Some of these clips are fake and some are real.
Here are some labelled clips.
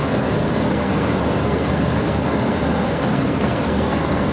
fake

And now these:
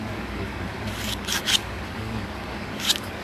fake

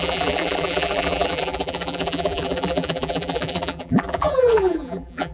fake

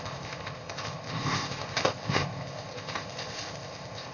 fake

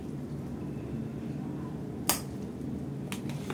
real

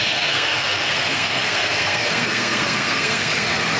fake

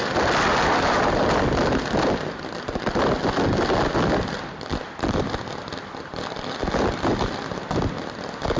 real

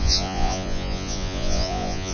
fake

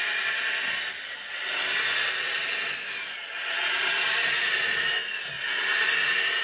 real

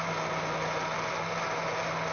real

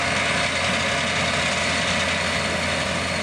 real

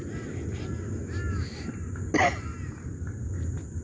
real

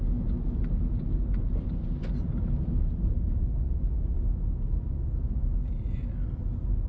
real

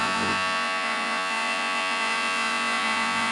fake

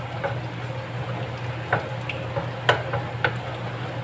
real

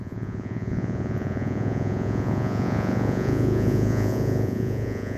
fake